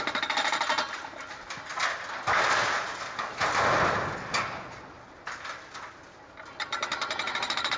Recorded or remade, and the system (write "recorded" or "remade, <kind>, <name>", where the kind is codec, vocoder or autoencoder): recorded